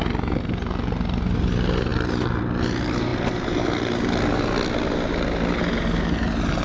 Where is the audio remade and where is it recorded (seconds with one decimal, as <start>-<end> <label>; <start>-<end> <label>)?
0.0-6.6 recorded